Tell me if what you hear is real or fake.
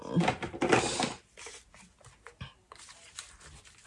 real